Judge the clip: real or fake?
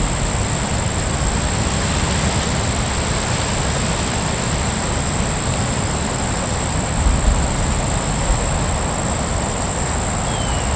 real